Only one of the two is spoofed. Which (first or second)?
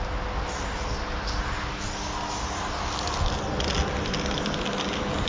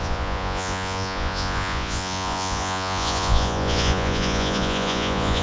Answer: second